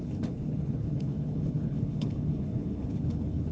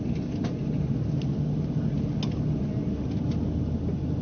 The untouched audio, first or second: second